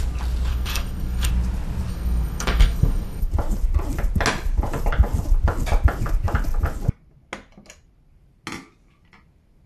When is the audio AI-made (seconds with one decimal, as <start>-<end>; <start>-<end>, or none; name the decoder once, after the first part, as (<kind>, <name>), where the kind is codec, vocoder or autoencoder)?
0.5-1.3 (codec, SNAC); 1.9-3.3